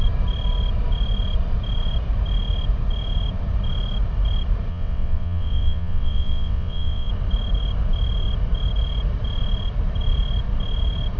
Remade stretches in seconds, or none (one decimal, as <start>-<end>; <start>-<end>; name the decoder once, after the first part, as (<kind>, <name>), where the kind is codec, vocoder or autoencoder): 4.7-7.1 (vocoder, WaveNeXt)